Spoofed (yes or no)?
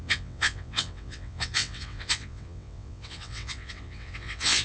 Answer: yes